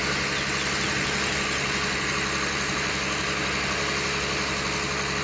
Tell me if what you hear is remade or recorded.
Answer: recorded